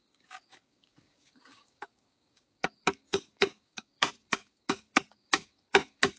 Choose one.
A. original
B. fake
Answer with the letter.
B